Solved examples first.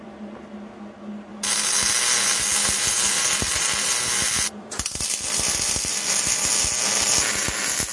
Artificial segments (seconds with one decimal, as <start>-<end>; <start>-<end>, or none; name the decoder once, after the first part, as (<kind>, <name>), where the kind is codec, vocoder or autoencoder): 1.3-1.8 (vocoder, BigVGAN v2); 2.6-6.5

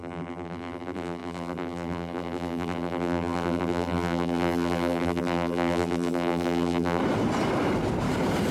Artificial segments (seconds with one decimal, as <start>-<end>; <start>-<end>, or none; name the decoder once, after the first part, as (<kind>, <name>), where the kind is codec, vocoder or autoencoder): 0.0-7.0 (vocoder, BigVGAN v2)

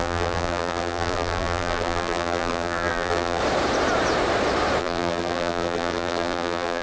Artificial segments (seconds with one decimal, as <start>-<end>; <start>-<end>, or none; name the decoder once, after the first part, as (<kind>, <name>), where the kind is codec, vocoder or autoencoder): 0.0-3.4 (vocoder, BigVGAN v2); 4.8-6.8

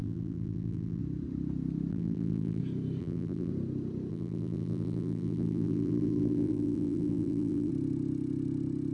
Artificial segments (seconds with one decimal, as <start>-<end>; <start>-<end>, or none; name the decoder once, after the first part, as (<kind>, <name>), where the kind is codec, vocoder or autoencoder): 0.0-1.0 (vocoder, BigVGAN v2); 1.9-2.6; 3.0-3.5; 4.1-7.7

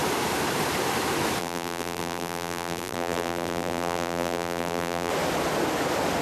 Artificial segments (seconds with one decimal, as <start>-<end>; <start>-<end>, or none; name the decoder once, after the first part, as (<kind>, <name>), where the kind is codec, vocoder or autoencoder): 1.4-5.1 (vocoder, BigVGAN v2)

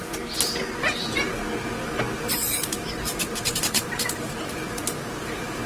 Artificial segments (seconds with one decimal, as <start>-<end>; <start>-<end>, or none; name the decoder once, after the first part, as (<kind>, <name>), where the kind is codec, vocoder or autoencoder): 2.2-5.7 (vocoder, BigVGAN v2)

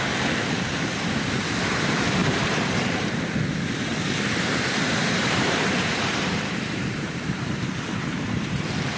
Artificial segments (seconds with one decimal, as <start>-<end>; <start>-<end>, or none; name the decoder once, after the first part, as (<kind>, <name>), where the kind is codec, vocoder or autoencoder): 2.2-3.1 (vocoder, BigVGAN v2); 3.9-8.6

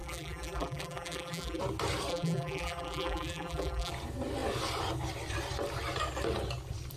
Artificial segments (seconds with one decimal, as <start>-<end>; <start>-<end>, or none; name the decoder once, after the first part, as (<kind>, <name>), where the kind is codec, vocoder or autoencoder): 0.0-1.6 (vocoder, BigVGAN v2); 2.1-3.9